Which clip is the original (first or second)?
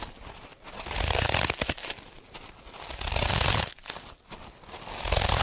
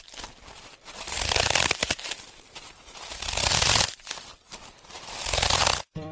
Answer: first